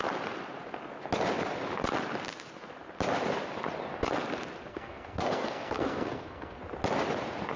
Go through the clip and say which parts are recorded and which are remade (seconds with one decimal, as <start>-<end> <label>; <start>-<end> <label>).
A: 0.0-4.7 recorded; 4.7-6.6 remade; 6.6-7.6 recorded